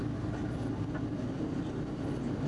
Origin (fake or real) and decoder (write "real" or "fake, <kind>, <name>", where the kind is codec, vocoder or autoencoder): real